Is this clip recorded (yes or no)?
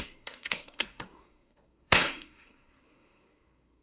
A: no